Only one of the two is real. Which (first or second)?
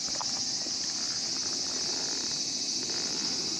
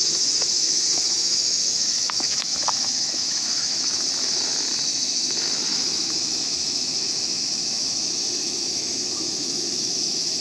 first